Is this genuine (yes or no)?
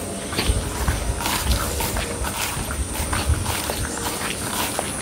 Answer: yes